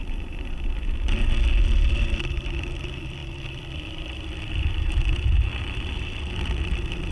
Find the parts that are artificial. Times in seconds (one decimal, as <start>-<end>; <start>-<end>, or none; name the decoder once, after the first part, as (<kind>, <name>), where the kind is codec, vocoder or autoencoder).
0.0-1.2 (vocoder, BigVGAN v2); 1.8-7.1